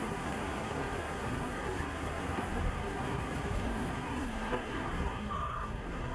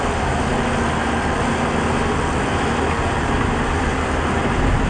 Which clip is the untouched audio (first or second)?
second